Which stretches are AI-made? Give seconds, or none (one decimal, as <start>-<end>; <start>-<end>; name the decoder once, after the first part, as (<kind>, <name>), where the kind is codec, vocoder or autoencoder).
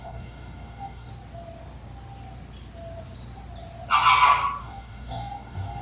0.0-1.1 (codec, DAC); 4.6-5.8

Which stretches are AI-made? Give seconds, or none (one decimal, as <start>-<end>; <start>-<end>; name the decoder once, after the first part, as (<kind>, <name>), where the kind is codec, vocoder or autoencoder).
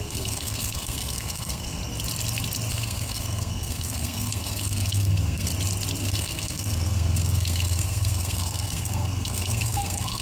0.0-1.8 (codec, SNAC); 2.7-5.5; 6.0-10.2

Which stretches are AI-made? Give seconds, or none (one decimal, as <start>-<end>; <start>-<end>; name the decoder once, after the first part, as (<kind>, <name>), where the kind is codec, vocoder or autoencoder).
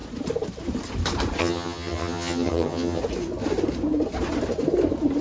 1.4-3.0 (vocoder, HiFi-GAN)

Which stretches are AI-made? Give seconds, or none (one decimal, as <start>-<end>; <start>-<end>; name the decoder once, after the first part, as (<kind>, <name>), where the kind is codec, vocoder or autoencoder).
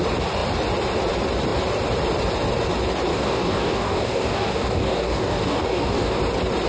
3.1-6.2 (codec, DAC)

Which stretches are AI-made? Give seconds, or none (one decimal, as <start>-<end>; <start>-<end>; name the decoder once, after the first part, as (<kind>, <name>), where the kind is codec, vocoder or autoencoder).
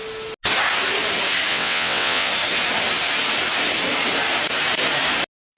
1.5-2.3 (vocoder, WaveNeXt)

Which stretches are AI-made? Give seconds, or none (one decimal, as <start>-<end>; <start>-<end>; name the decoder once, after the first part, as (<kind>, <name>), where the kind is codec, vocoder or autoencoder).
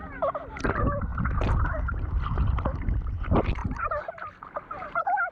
3.6-5.3 (vocoder, BigVGAN v2)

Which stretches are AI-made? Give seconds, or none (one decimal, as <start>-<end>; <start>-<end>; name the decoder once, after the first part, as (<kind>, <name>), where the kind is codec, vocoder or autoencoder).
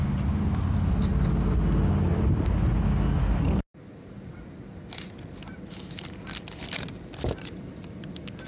none